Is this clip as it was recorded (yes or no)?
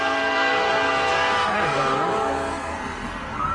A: no